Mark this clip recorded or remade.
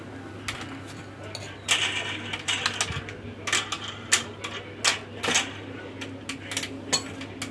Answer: recorded